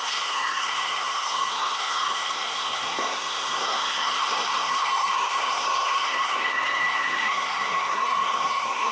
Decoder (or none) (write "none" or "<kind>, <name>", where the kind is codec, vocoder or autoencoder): codec, SNAC